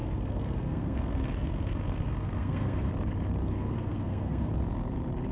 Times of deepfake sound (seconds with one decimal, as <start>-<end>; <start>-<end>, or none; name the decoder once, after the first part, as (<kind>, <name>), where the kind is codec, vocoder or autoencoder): 0.0-2.9 (codec, SNAC); 3.4-4.5